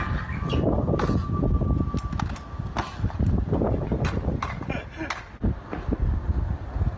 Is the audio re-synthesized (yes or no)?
no